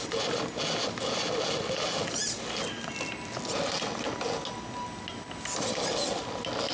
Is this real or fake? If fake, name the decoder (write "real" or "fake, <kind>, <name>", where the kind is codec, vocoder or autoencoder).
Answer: real